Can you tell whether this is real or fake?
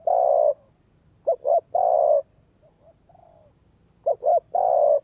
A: real